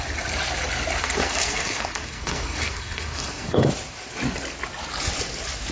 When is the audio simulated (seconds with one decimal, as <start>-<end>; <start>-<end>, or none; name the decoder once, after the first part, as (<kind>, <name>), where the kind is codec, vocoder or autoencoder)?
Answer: 1.0-3.6 (codec, SNAC)